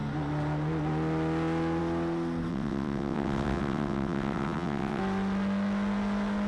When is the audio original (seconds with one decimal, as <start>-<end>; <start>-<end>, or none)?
0.0-2.5; 5.0-6.5